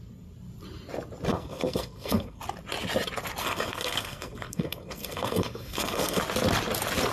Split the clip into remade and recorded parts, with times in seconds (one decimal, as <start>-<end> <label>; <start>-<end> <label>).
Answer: 0.0-1.3 recorded; 1.3-2.4 remade; 2.4-3.4 recorded; 3.4-6.2 remade; 6.2-7.1 recorded